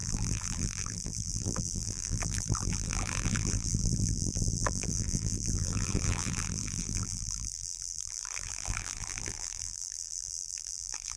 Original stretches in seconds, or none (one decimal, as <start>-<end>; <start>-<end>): none